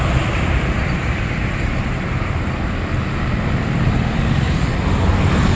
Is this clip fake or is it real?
real